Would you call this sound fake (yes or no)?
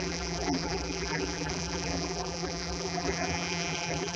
yes